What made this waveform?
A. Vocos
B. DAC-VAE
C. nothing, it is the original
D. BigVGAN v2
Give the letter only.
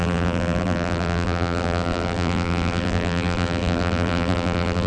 D